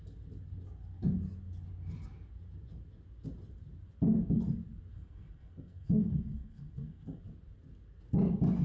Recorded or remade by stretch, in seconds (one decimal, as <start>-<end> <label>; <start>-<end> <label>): 0.0-4.9 recorded; 4.9-7.2 remade; 7.2-8.6 recorded